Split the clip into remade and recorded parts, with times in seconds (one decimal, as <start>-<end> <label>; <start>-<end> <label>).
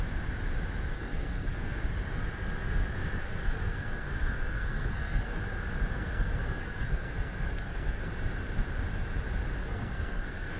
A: 0.0-0.9 recorded; 0.9-1.8 remade; 1.8-3.2 recorded; 3.2-5.4 remade; 5.4-5.9 recorded; 5.9-8.1 remade; 8.1-9.6 recorded; 9.6-10.6 remade